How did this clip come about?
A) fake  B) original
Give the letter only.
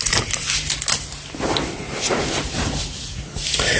B